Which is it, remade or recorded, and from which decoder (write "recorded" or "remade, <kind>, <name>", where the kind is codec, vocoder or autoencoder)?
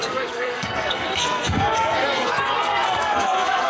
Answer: remade, codec, SNAC